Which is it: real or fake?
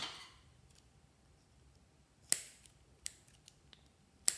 real